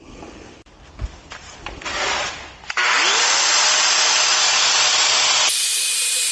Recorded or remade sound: recorded